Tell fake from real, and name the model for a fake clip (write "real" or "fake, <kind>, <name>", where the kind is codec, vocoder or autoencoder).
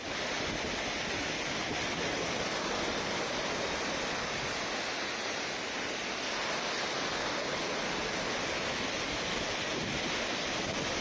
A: real